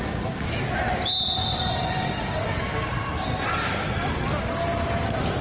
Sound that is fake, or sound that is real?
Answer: real